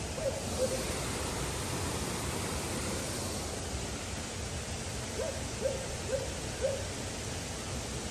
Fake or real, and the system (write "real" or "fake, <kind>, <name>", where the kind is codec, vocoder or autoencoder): real